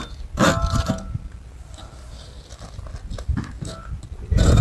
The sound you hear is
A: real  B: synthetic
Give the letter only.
A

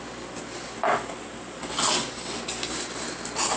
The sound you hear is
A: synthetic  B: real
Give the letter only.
B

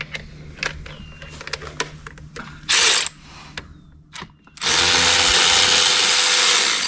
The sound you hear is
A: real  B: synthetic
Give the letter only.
A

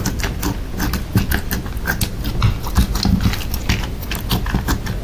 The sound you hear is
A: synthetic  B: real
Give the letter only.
B